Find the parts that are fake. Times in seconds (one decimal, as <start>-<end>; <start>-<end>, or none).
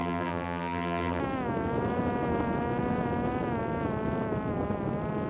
0.0-1.2